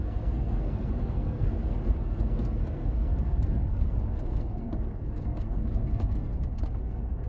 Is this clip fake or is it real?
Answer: fake